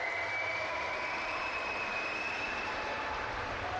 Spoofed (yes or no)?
yes